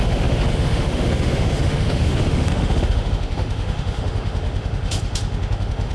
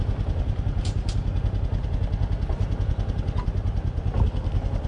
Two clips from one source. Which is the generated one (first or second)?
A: first